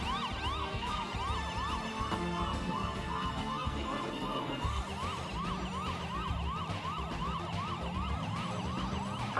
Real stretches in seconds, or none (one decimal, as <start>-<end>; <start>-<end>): 0.0-0.6; 1.1-1.9; 4.8-9.4